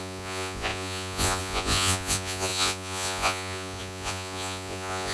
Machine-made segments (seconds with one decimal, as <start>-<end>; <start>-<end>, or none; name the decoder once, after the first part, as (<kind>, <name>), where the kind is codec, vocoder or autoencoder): 0.0-5.1 (vocoder, Vocos)